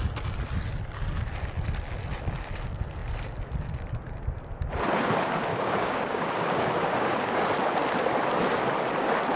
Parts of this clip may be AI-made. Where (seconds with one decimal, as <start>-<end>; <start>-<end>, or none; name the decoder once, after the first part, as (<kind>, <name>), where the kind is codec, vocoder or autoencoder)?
5.5-7.5 (codec, DAC)